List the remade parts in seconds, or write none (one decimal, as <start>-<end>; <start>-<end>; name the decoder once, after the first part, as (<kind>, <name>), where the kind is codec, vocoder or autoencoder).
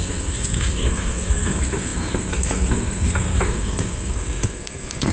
0.0-5.1 (codec, SNAC)